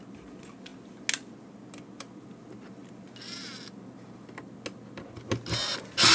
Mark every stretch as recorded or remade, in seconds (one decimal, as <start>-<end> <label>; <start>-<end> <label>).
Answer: 0.0-6.1 recorded